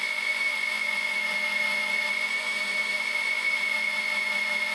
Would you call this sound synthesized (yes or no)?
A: yes